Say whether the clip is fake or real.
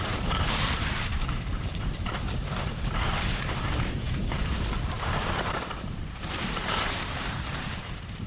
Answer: fake